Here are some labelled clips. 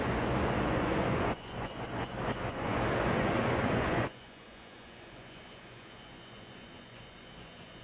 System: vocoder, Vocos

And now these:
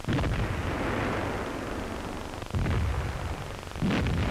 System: none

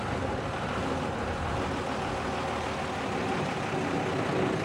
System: none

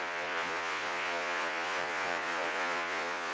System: vocoder, Vocos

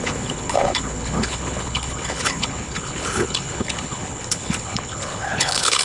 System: codec, HILCodec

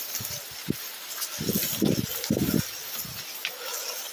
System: none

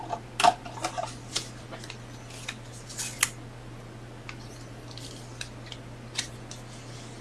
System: none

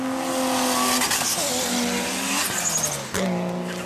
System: none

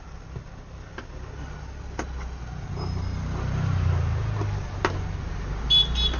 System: none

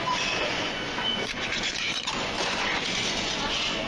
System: vocoder, Vocos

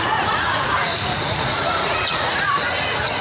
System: vocoder, Vocos